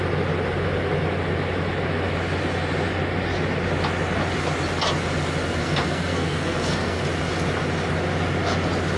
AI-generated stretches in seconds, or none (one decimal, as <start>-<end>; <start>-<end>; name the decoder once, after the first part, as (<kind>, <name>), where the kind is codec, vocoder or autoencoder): 5.6-7.0 (codec, SNAC)